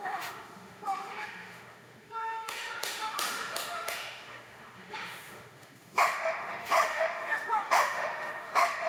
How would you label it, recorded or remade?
remade